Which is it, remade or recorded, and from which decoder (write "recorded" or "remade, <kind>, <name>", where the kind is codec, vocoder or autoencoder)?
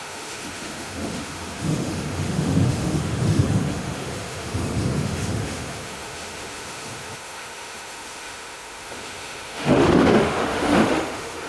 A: remade, autoencoder, DAC-VAE